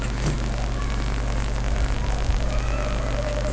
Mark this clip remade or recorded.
recorded